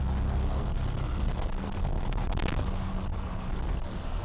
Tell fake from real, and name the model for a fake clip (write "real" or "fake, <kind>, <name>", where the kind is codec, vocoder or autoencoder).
fake, codec, SNAC